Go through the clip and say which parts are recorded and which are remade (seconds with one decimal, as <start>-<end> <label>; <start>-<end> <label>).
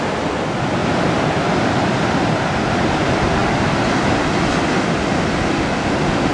0.0-6.3 recorded